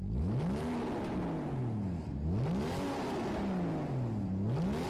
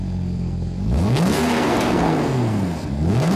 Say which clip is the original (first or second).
first